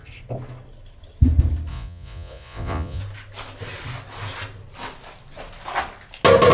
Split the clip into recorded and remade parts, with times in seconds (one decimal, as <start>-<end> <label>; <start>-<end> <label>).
0.0-1.7 recorded; 1.7-3.0 remade; 3.0-6.5 recorded